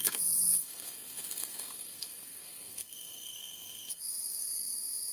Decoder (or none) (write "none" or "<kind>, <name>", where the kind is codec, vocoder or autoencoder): codec, SNAC